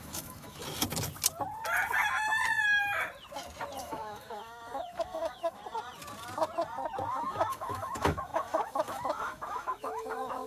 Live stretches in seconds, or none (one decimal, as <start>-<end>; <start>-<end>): 0.6-3.8; 5.6-7.1